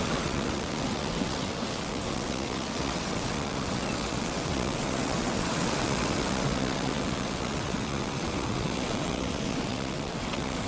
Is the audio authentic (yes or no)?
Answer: no